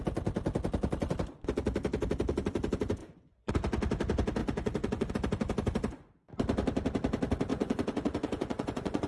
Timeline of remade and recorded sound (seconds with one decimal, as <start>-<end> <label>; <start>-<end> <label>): 0.0-3.0 recorded; 3.0-3.5 remade; 3.5-4.4 recorded; 4.4-5.1 remade; 5.1-7.5 recorded; 7.5-9.1 remade